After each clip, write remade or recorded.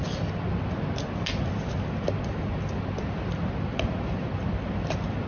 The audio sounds recorded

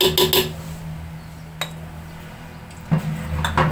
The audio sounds recorded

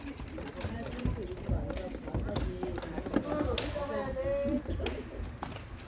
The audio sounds recorded